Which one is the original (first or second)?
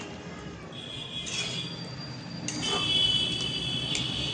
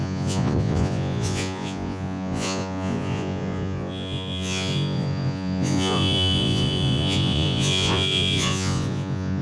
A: first